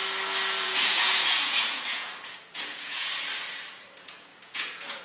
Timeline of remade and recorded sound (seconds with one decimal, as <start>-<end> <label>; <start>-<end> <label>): 0.0-0.6 recorded; 0.6-3.1 remade; 3.1-3.9 recorded; 3.9-5.0 remade